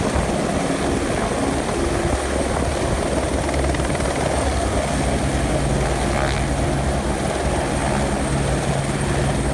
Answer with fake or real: real